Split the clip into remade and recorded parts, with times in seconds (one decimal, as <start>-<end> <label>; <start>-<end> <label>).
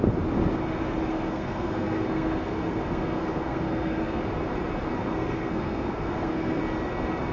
0.0-1.1 recorded; 1.1-4.2 remade; 4.2-5.0 recorded; 5.0-6.6 remade; 6.6-7.3 recorded